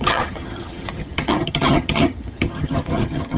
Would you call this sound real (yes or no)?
no